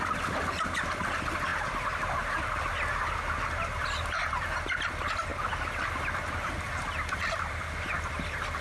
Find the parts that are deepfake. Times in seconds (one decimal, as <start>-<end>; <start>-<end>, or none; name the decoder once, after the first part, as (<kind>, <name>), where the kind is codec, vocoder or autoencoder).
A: none